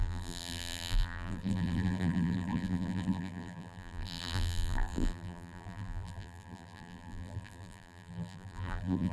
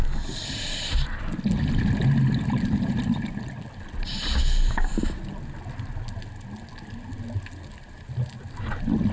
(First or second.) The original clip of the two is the second